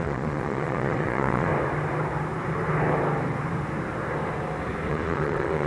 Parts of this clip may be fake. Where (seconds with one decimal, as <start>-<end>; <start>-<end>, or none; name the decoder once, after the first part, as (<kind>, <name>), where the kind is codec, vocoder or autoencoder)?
0.0-1.5 (vocoder, Vocos); 4.9-5.7